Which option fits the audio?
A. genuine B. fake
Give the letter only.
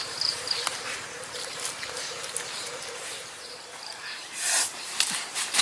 B